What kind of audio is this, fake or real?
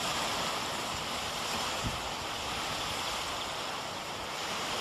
fake